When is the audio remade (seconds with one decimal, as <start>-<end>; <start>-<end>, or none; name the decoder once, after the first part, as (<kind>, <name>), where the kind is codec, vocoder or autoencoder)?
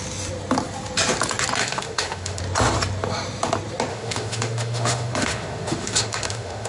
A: 1.6-2.4 (autoencoder, DAC-VAE); 3.9-6.7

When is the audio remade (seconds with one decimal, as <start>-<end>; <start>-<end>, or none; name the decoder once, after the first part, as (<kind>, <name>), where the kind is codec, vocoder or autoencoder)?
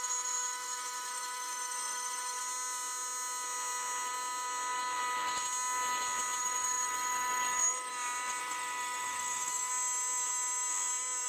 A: 0.0-2.4 (autoencoder, DAC-VAE); 6.4-7.9; 8.4-9.7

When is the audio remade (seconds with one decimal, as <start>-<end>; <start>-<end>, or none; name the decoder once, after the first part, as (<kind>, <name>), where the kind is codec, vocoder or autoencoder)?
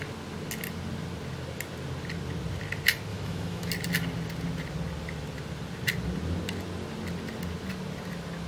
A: 3.1-3.7 (autoencoder, DAC-VAE)